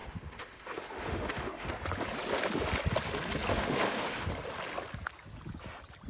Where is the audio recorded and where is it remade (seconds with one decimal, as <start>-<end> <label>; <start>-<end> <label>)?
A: 0.0-1.7 remade; 1.7-3.5 recorded; 3.5-4.3 remade; 4.3-6.1 recorded